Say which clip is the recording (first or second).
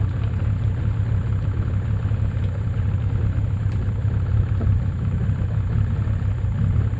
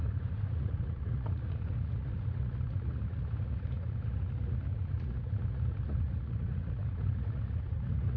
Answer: first